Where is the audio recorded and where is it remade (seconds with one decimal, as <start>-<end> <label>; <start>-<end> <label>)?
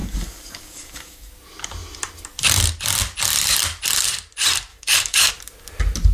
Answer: 0.0-1.3 remade; 1.3-4.7 recorded; 4.7-5.3 remade; 5.3-6.1 recorded